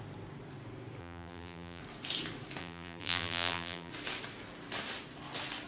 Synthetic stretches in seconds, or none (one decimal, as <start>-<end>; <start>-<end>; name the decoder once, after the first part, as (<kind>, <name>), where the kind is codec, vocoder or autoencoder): 1.0-1.8 (vocoder, BigVGAN v2); 2.6-3.9